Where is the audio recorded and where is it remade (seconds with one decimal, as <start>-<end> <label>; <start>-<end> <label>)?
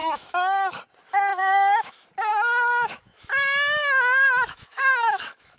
0.0-0.8 remade; 0.8-1.3 recorded; 1.3-1.9 remade; 1.9-2.3 recorded; 2.3-5.6 remade